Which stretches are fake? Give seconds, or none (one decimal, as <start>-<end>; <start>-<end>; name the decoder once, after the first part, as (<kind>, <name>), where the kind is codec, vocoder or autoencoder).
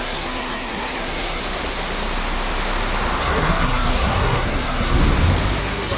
0.0-1.4 (codec, SNAC); 3.2-5.0; 5.6-6.0